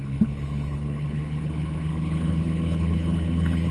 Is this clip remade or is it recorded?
remade